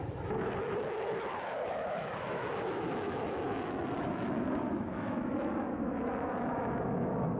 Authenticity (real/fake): fake